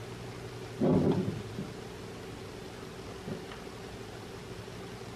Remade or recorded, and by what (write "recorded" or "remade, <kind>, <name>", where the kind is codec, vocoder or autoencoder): recorded